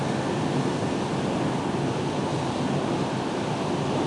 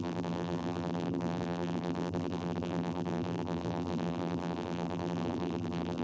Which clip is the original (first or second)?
first